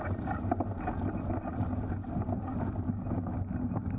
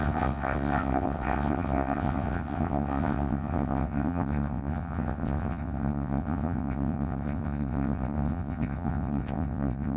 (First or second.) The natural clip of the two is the first